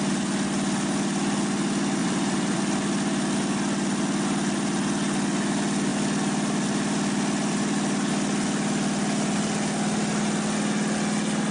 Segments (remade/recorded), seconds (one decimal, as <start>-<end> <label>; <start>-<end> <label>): 0.0-2.0 recorded; 2.0-2.6 remade; 2.6-11.5 recorded